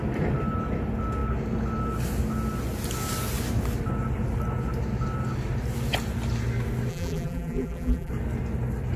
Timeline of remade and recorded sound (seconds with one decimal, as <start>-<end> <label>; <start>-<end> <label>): 0.0-6.9 recorded; 6.9-8.1 remade; 8.1-9.0 recorded